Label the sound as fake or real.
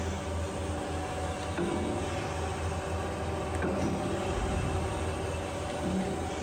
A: real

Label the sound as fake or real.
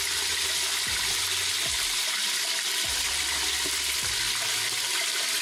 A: real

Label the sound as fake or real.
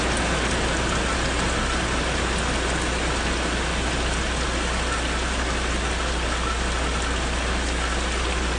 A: real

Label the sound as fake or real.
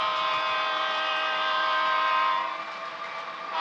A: real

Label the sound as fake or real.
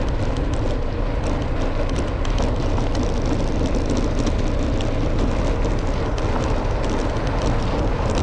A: real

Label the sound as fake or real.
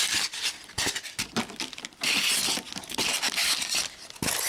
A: real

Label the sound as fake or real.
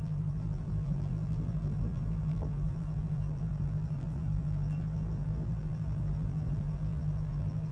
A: fake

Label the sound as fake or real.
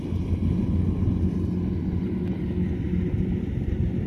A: real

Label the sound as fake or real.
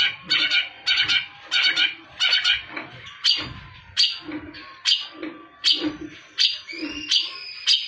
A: fake